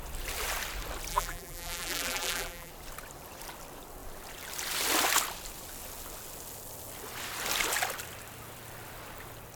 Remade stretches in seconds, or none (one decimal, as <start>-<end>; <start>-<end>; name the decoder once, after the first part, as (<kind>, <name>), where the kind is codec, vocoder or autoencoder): 1.1-2.7 (vocoder, BigVGAN v2)